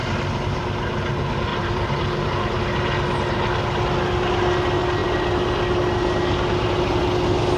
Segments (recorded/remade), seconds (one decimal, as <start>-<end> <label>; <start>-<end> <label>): 0.0-0.9 remade; 0.9-1.5 recorded; 1.5-2.3 remade; 2.3-7.6 recorded